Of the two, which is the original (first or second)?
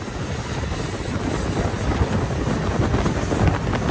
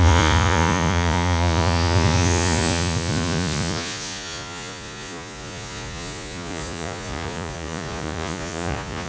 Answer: first